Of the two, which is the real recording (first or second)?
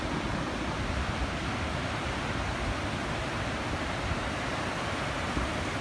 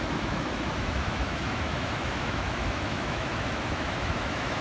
first